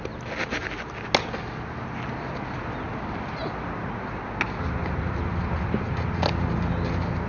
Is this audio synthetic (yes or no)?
no